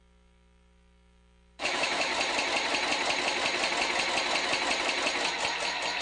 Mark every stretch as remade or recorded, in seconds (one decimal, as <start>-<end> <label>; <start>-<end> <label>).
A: 0.0-2.1 remade; 2.1-6.0 recorded